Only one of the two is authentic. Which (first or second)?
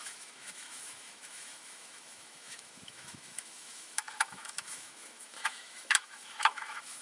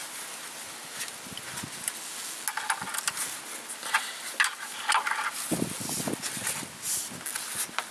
second